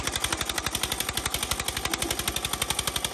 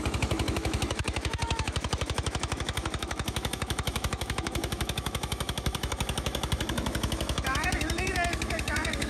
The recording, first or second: first